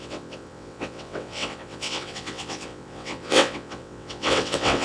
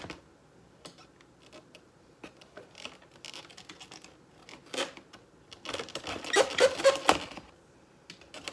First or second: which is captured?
second